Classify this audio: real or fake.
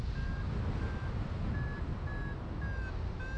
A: real